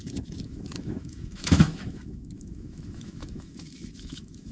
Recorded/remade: remade